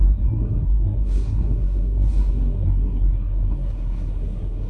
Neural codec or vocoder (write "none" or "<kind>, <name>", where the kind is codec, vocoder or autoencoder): codec, SNAC